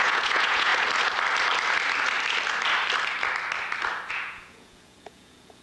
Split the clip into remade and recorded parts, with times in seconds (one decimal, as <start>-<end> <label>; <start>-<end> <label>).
0.0-0.7 remade; 0.7-4.1 recorded; 4.1-5.6 remade